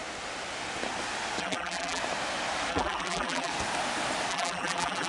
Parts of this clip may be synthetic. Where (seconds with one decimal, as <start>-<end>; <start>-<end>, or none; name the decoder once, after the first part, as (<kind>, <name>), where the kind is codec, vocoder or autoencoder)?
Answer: 1.4-2.0 (vocoder, BigVGAN v2); 2.7-3.5; 4.3-5.1